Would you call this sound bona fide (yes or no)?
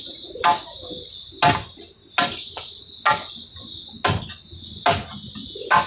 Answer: yes